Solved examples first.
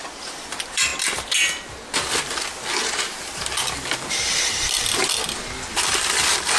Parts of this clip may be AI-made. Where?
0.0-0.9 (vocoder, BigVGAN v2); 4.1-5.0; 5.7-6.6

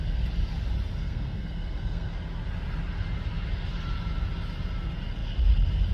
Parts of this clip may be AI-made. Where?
1.0-2.1 (codec, SNAC)

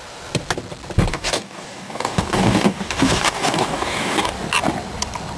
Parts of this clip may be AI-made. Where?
1.1-4.3 (codec, DAC)

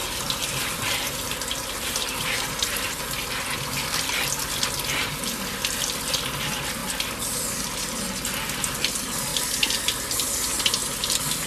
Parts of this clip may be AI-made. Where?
0.0-3.0 (vocoder, BigVGAN v2)

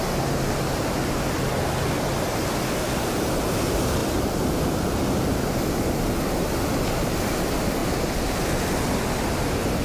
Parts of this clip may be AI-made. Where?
4.0-5.5 (vocoder, BigVGAN v2)

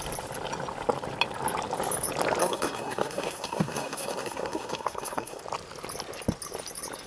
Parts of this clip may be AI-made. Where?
2.4-5.4 (codec, SNAC)

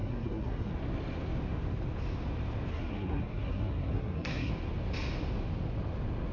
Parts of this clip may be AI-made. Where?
0.0-0.7 (codec, SNAC); 2.7-4.5